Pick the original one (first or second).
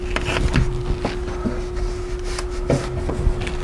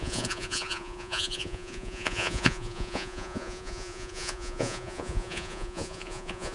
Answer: first